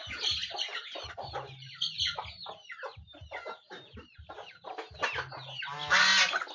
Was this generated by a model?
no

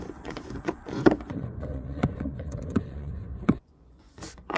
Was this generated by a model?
yes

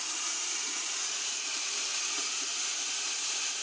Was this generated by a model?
yes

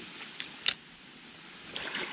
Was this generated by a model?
no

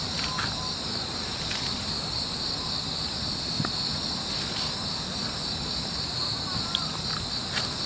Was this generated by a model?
no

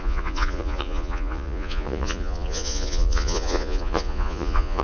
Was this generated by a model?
yes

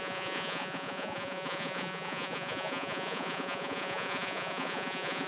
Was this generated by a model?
yes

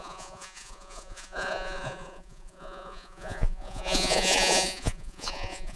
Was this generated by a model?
yes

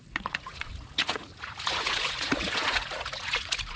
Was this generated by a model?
yes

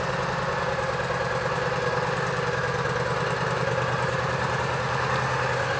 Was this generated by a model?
no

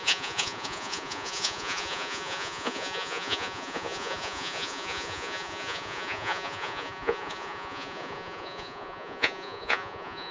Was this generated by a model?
yes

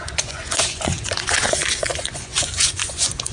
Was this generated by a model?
yes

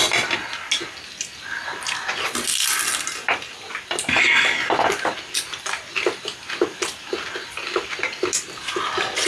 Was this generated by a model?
no